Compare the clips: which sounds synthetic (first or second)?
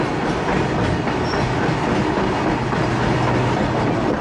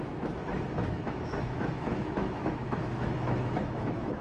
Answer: second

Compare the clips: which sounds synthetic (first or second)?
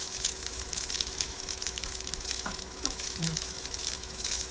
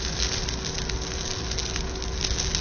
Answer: first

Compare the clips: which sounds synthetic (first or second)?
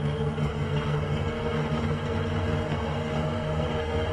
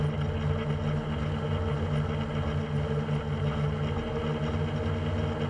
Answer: first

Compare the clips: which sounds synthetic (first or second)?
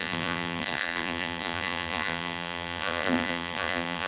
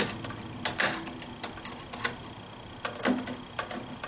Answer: first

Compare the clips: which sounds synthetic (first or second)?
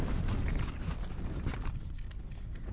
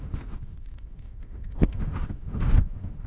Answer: second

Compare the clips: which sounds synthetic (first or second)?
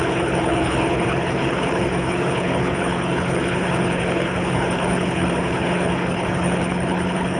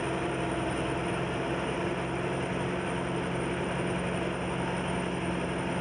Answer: first